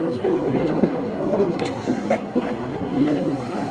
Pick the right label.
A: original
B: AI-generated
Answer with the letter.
B